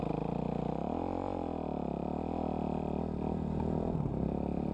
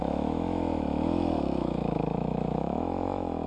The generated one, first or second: second